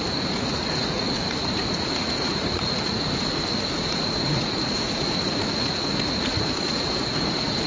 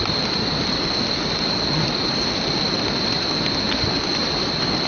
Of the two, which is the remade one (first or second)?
first